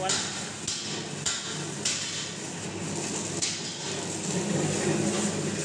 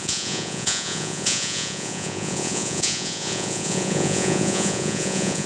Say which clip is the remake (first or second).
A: second